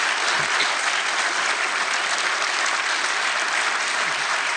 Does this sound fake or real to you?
real